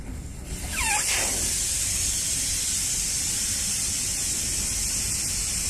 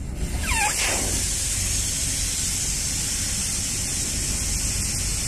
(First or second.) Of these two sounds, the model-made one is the first